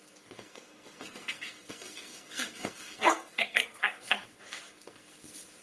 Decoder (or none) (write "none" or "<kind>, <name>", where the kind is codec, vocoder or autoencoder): codec, SNAC